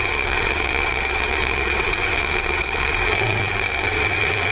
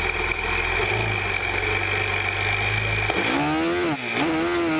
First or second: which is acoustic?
second